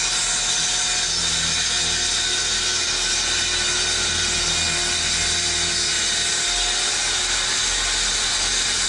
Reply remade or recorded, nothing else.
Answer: recorded